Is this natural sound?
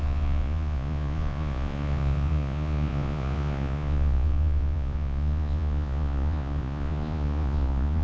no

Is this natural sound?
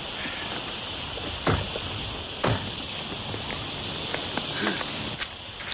yes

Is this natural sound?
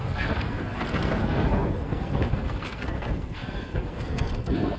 no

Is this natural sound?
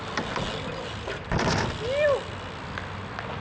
yes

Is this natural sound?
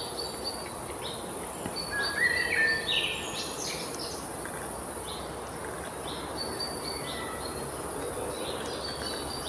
yes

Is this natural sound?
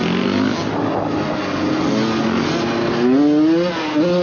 yes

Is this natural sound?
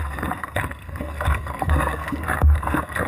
no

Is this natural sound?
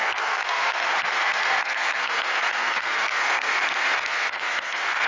no